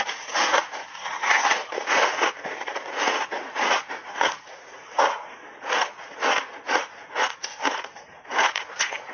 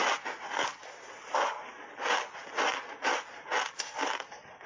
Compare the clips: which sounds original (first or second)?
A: second